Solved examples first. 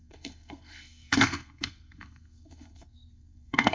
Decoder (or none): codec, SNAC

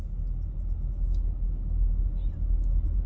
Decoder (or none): none